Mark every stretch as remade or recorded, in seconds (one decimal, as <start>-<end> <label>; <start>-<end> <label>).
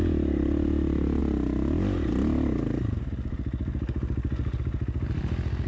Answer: 0.0-5.7 recorded